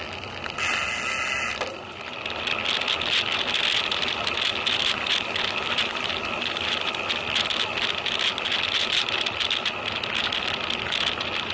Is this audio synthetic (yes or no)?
no